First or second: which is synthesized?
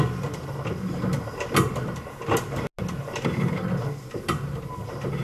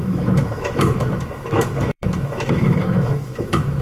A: second